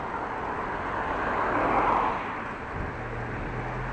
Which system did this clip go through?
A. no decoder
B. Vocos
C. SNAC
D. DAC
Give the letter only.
A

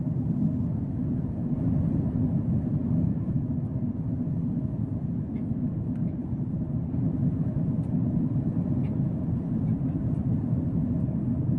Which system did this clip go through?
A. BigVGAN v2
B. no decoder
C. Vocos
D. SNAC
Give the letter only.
B